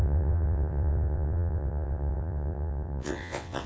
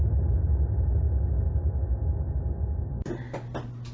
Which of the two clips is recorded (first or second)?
second